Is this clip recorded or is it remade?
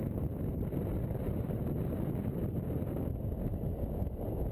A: recorded